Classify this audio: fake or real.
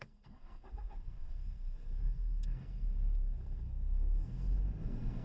fake